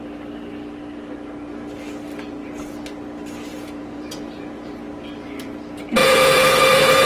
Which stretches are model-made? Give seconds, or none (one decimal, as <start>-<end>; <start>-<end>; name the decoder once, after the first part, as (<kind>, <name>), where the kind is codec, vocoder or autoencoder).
3.5-4.7 (vocoder, Vocos); 6.0-7.1